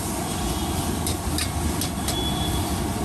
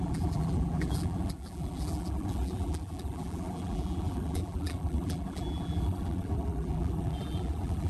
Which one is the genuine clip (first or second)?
first